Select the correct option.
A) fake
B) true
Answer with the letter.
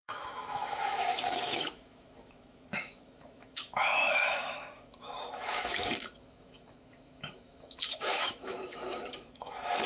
A